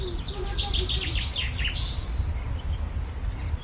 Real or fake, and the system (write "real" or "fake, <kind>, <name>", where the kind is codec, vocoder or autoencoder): real